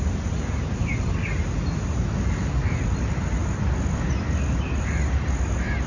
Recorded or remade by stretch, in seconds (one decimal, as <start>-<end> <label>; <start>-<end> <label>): 0.0-5.9 recorded